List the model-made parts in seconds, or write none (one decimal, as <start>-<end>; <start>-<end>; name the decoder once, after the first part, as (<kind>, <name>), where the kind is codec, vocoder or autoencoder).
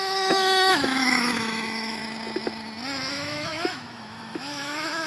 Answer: 0.0-2.0 (autoencoder, DAC-VAE); 3.1-5.1